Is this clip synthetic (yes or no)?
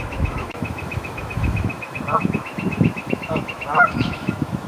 yes